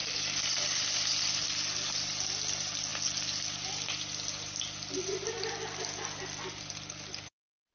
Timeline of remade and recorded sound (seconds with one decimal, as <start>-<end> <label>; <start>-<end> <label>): 0.0-7.7 recorded